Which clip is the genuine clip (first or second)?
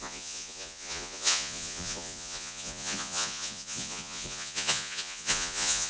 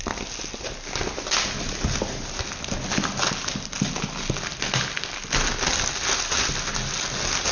second